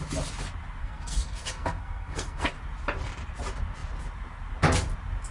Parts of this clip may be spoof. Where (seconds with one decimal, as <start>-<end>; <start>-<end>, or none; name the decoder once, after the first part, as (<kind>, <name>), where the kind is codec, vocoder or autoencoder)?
0.8-2.5 (codec, SNAC)

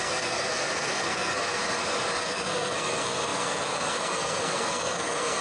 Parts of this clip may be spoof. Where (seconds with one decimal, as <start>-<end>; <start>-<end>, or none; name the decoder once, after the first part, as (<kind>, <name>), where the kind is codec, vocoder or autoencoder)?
0.0-1.6 (codec, SNAC); 2.2-5.4

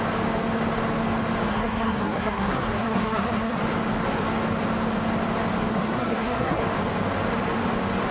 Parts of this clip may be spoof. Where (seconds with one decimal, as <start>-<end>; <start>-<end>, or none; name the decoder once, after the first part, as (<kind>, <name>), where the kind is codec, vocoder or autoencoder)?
1.5-3.6 (codec, SNAC); 5.7-6.6

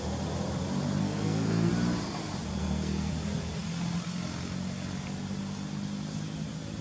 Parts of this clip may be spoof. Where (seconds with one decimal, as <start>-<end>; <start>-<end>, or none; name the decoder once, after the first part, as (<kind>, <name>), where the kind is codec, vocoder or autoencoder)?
1.0-1.7 (codec, SNAC); 2.5-3.1

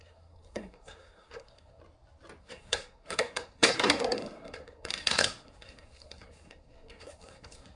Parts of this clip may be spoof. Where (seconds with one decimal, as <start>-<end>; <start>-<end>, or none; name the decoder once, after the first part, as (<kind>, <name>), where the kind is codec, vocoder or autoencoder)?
0.0-1.8 (codec, SNAC); 2.4-7.8

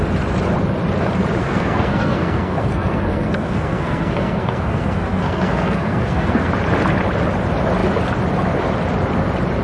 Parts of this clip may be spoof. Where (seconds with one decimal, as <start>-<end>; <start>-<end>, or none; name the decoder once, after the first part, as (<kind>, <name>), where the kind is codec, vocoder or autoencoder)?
1.4-6.5 (codec, SNAC)

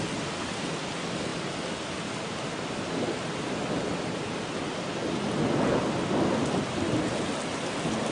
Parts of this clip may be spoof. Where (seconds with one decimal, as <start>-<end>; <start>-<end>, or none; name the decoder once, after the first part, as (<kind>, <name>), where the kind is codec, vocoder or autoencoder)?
none